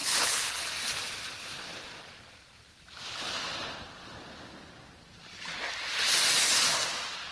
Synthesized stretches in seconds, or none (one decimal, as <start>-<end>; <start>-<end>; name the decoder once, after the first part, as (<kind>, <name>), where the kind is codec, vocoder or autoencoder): 0.0-0.6 (codec, HILCodec)